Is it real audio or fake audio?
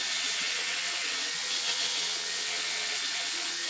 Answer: fake